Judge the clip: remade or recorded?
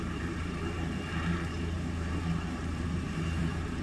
remade